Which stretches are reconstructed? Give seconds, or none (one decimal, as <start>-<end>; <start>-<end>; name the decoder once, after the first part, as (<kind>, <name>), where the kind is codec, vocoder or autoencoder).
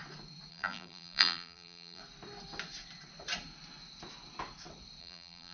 0.5-2.0 (vocoder, BigVGAN v2); 5.0-5.5